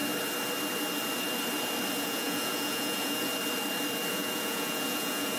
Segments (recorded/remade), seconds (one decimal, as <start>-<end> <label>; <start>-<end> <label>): 0.0-2.0 recorded; 2.0-3.3 remade; 3.3-4.1 recorded; 4.1-5.4 remade